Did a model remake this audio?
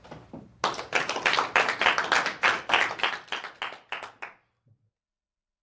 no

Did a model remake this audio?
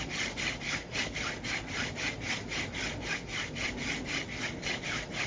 no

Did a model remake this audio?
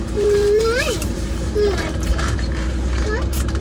yes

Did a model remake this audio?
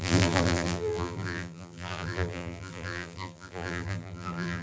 yes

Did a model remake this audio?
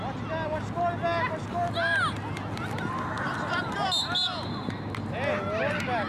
no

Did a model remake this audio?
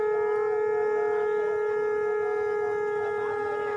no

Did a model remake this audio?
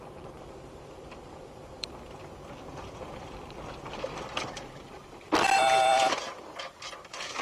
yes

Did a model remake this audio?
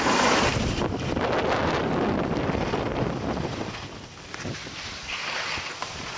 no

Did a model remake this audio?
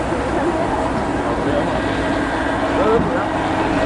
no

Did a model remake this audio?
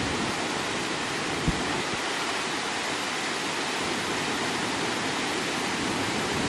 no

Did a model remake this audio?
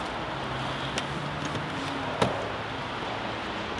no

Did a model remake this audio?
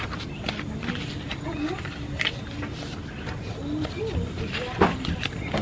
yes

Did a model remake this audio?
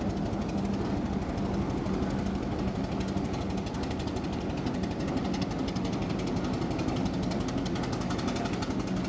no